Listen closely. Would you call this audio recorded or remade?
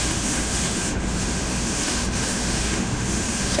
remade